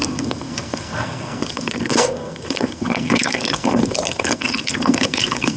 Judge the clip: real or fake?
fake